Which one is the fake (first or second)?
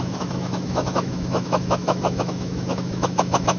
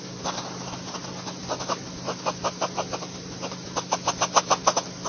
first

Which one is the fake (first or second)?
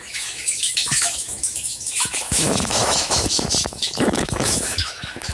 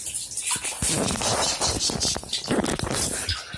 first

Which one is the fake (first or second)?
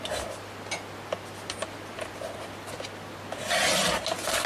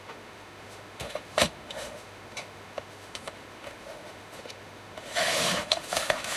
second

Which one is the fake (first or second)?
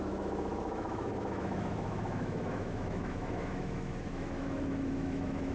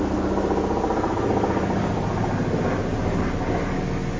first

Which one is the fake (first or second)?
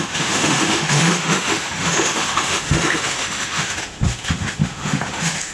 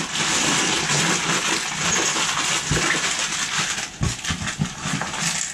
first